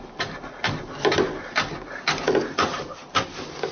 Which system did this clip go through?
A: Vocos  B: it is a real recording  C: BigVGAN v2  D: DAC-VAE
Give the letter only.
B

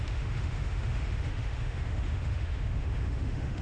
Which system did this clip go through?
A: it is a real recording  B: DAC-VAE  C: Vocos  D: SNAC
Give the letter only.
B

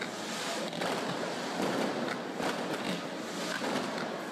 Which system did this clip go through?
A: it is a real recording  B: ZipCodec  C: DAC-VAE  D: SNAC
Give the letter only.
A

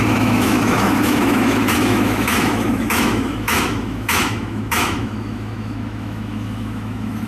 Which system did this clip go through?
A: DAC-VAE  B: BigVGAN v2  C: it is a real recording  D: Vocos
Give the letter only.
A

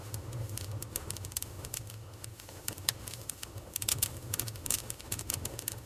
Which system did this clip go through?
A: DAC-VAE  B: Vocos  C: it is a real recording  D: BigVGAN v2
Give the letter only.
A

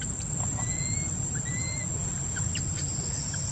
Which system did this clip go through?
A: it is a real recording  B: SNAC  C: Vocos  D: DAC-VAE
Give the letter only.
A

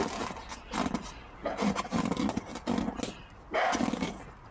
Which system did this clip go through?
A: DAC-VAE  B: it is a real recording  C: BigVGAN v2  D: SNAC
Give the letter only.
B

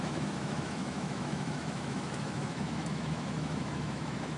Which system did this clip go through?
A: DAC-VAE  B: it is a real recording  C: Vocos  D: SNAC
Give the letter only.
A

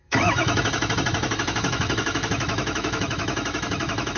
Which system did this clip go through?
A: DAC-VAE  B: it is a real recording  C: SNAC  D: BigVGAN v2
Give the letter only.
A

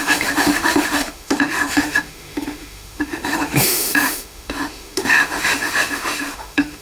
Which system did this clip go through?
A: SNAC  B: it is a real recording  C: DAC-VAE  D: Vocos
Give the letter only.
C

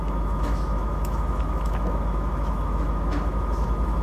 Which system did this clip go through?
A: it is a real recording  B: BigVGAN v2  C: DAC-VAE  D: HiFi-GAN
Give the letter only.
C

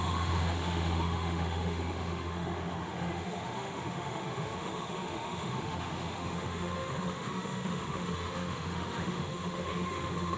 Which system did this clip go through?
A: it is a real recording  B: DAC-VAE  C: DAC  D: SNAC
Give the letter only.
B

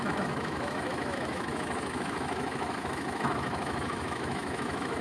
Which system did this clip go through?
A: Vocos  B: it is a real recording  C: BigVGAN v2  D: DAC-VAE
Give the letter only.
D